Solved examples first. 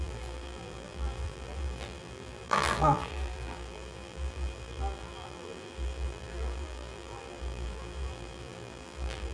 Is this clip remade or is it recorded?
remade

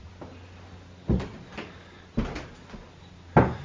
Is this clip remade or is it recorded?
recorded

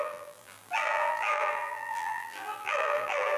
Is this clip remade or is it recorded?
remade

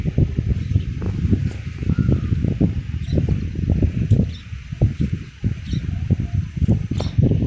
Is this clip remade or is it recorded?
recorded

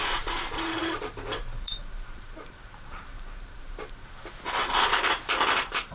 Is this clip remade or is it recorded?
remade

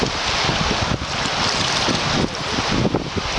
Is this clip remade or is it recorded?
recorded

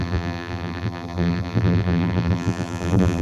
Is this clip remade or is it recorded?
remade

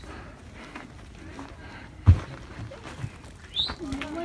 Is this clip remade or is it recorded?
recorded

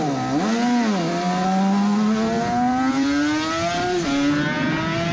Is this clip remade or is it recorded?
recorded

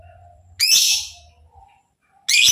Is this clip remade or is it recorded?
recorded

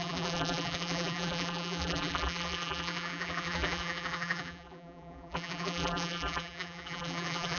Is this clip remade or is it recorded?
remade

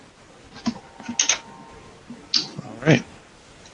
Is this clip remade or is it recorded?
recorded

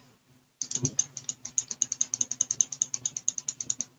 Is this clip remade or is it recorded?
recorded